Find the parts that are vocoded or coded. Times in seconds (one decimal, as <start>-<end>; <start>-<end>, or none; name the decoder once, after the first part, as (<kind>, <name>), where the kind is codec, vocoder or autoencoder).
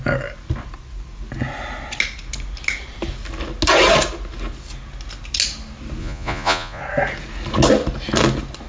6.0-6.8 (vocoder, Vocos)